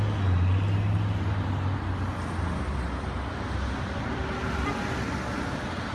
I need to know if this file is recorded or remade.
recorded